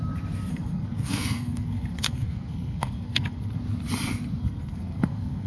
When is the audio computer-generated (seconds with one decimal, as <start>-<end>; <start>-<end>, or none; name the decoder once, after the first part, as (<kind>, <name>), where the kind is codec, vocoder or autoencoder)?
0.5-3.6 (codec, SNAC); 4.4-5.5